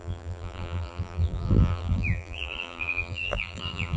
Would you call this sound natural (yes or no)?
no